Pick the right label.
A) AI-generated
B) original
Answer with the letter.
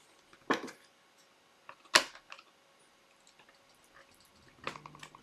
B